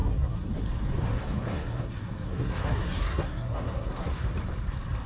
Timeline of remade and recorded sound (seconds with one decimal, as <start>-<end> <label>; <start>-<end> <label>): 0.0-0.5 remade; 0.5-1.1 recorded; 1.1-4.2 remade; 4.2-5.1 recorded